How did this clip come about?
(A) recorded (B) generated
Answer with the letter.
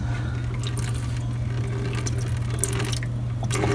A